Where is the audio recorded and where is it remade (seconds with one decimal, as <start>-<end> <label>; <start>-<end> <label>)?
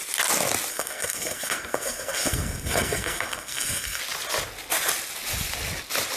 0.0-0.7 recorded; 0.7-4.0 remade; 4.0-6.2 recorded